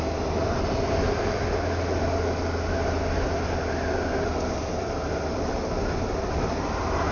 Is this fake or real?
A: real